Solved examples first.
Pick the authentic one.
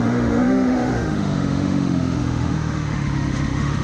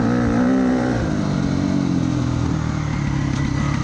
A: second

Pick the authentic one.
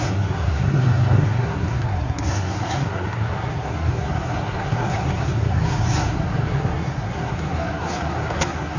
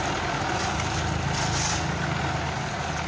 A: second